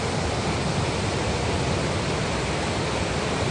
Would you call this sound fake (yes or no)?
no